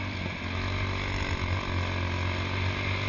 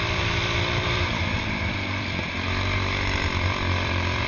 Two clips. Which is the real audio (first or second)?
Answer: first